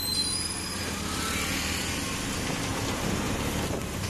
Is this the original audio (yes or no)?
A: yes